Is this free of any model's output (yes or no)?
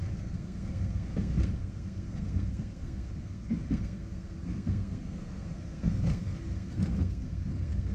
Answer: no